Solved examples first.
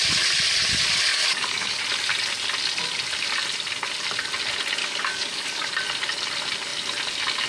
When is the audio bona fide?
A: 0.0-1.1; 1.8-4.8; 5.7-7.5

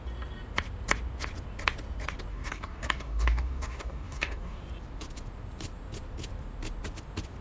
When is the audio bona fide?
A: 0.0-2.3; 4.6-7.4

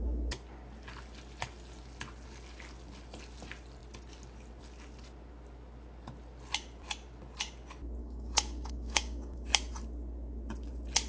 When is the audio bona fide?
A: 0.0-8.0; 9.5-11.1